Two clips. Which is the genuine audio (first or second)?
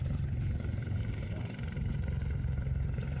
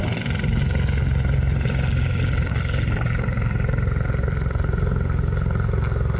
second